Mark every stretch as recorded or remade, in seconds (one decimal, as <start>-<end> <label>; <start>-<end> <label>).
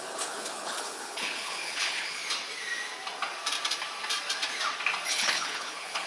0.0-2.2 remade; 2.2-5.1 recorded; 5.1-6.1 remade